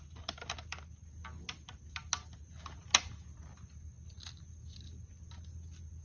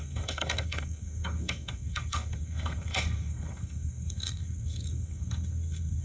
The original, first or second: first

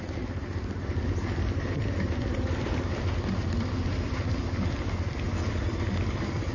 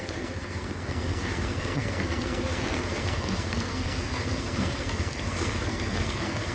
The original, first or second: first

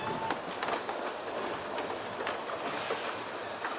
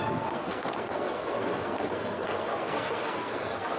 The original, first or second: first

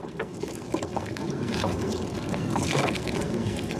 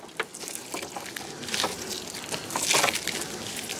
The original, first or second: second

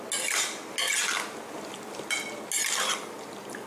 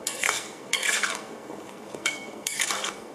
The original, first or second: first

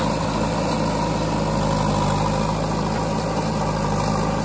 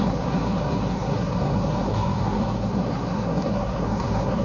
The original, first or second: first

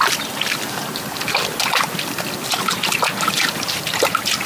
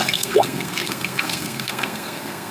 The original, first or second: first